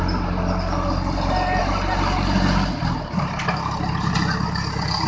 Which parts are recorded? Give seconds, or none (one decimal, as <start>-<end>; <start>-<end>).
0.0-5.1